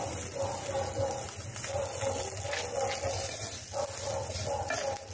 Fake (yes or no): no